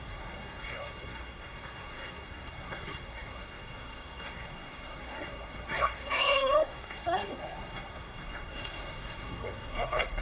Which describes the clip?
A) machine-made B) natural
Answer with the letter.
A